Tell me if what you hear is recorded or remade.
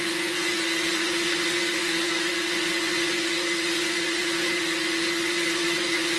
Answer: remade